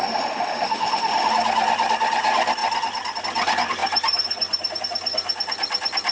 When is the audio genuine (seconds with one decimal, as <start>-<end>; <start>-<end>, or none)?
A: 1.3-6.1